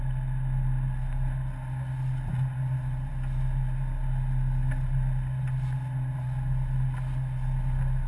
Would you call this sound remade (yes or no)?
no